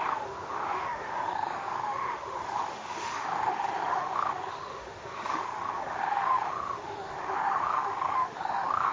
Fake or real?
fake